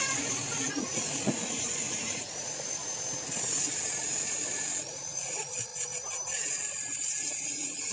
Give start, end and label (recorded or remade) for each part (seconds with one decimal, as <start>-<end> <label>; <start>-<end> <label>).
0.0-2.8 remade; 2.8-4.5 recorded; 4.5-5.7 remade; 5.7-7.4 recorded; 7.4-7.9 remade